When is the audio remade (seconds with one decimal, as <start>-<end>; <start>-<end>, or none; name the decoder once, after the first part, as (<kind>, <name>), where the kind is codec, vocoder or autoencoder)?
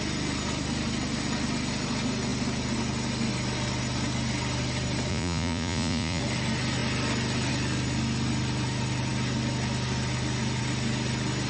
5.1-6.2 (vocoder, Vocos)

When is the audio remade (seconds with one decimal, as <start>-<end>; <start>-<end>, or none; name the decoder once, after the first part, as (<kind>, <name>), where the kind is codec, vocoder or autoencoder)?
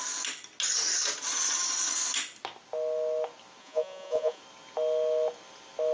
3.6-4.4 (vocoder, Vocos)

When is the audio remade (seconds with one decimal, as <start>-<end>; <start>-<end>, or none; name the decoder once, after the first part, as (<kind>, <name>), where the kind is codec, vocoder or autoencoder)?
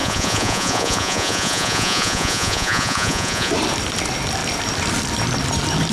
0.0-3.5 (vocoder, Vocos)